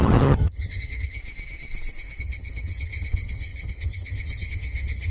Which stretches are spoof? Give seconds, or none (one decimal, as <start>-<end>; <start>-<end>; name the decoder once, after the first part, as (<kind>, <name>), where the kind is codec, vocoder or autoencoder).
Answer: 0.0-1.2 (vocoder, HiFi-GAN); 2.2-5.1

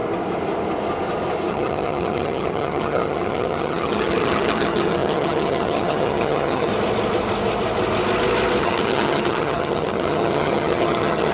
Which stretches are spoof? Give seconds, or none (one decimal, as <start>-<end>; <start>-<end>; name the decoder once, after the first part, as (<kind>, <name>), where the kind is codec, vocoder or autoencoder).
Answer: 1.5-6.7 (vocoder, HiFi-GAN); 8.6-11.3

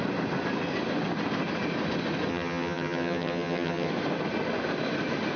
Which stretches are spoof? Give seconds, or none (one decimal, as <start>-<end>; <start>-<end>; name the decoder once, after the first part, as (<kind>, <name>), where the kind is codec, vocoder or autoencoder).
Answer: 2.3-3.9 (vocoder, HiFi-GAN)

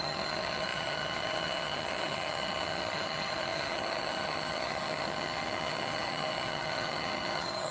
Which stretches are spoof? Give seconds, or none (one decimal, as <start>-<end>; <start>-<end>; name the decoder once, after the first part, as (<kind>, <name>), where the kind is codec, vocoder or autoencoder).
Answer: 0.0-7.7 (vocoder, HiFi-GAN)

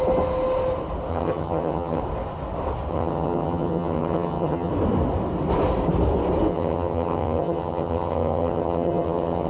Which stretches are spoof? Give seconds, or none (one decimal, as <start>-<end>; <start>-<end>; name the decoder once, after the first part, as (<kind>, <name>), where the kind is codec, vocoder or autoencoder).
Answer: 1.1-2.0 (vocoder, HiFi-GAN); 2.9-4.7; 6.5-9.5

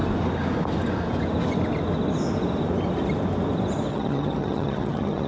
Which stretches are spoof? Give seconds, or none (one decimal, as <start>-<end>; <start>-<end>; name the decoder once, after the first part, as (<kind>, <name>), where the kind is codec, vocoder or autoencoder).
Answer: 3.9-5.3 (vocoder, HiFi-GAN)

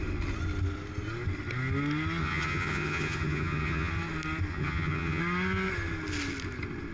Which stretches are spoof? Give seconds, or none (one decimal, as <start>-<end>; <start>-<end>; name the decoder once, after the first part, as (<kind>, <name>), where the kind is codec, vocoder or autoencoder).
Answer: 2.2-3.9 (vocoder, HiFi-GAN); 4.5-5.2